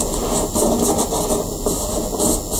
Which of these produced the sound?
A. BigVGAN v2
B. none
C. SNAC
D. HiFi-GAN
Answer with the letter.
B